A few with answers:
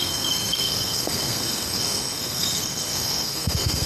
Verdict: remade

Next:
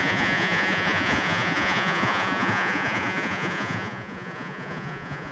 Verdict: remade